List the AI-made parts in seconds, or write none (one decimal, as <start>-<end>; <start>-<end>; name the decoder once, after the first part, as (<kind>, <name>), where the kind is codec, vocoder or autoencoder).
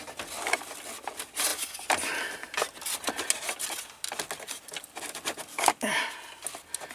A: 5.5-6.0 (codec, DAC)